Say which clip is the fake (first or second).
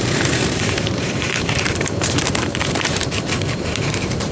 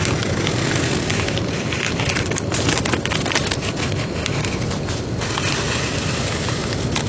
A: first